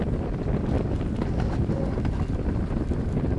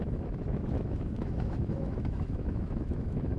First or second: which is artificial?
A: second